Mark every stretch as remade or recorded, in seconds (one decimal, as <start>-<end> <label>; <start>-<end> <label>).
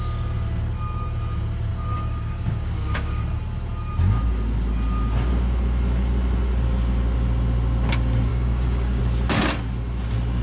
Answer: 0.0-1.7 recorded; 1.7-3.2 remade; 3.2-8.3 recorded; 8.3-9.0 remade; 9.0-10.4 recorded